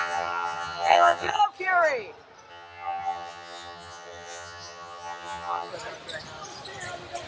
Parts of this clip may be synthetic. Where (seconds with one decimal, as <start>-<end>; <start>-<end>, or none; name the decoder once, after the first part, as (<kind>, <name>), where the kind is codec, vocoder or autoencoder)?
0.0-1.4 (vocoder, HiFi-GAN); 2.5-5.7

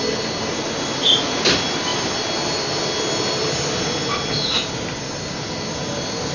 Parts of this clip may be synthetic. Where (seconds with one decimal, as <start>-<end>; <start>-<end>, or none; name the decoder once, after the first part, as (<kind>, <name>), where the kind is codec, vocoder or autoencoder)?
none

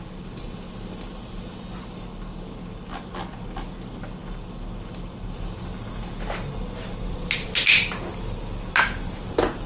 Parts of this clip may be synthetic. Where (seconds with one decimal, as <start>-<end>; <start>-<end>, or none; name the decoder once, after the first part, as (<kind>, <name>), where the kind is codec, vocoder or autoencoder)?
none

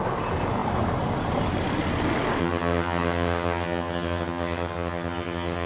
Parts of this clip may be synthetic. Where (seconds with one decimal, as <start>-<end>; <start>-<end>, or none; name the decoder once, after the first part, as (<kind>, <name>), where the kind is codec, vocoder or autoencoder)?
2.4-5.7 (vocoder, HiFi-GAN)

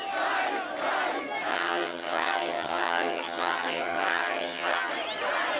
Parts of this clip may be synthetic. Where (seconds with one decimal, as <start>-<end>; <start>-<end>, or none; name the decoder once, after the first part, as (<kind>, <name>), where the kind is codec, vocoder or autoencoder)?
1.5-4.9 (vocoder, HiFi-GAN)

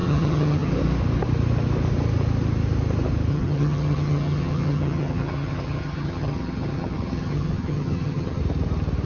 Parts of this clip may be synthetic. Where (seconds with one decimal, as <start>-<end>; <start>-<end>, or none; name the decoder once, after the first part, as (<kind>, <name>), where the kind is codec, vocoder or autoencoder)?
0.0-0.7 (vocoder, HiFi-GAN); 3.3-8.4

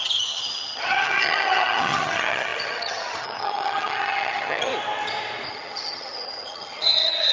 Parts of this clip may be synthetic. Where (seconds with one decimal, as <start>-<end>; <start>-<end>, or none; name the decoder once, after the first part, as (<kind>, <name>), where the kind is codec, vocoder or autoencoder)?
0.0-4.7 (vocoder, HiFi-GAN); 5.5-7.3

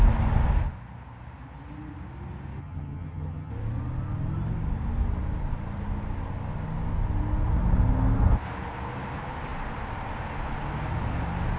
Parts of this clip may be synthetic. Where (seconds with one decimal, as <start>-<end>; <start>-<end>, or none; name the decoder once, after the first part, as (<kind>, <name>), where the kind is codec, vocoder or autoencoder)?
2.6-3.5 (vocoder, HiFi-GAN)